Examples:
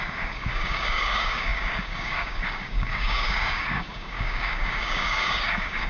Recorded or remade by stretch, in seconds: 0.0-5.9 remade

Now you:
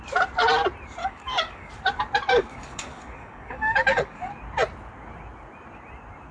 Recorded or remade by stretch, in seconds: 0.0-1.0 recorded; 1.0-1.7 remade; 1.7-2.3 recorded; 2.3-4.3 remade; 4.3-6.3 recorded

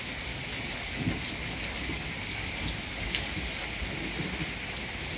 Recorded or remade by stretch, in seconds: 0.0-0.5 recorded; 0.5-3.6 remade; 3.6-5.2 recorded